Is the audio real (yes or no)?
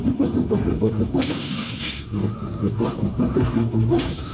no